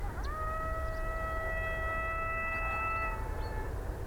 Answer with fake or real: real